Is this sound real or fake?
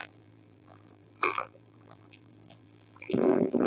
fake